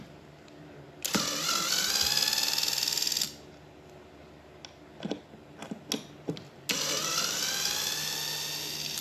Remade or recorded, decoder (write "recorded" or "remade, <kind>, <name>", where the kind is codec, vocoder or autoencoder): recorded